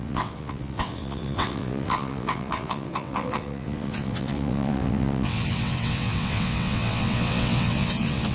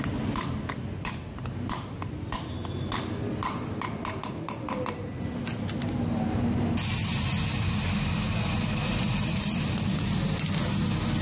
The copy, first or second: first